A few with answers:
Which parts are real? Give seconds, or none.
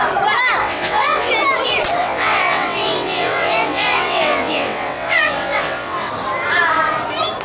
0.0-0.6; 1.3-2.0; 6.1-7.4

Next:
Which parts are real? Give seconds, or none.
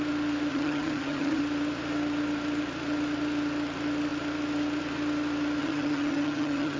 0.0-0.5; 1.4-5.6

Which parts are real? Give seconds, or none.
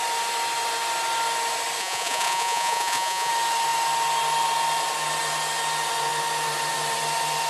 0.0-1.8; 3.3-7.5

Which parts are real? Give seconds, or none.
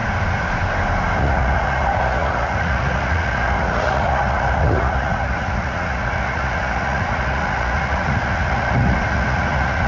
0.0-1.2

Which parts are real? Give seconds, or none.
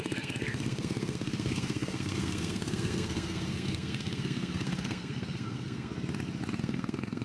5.9-6.6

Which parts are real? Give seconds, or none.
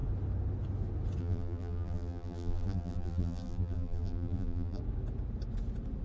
0.0-1.2; 4.8-6.0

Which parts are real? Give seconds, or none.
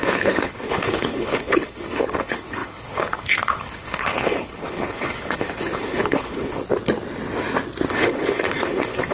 6.6-7.9